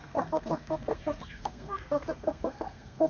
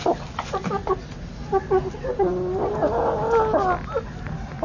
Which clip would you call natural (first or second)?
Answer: second